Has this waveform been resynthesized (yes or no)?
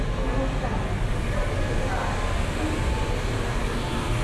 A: no